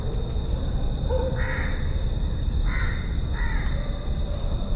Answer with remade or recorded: recorded